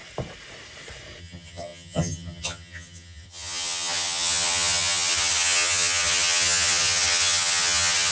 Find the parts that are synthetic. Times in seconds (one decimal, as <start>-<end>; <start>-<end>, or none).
1.2-8.1